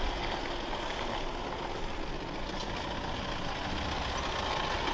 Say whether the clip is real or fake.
real